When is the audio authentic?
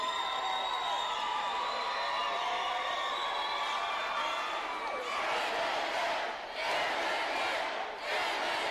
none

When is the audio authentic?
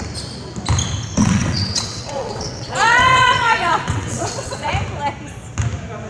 0.0-1.2; 4.7-6.1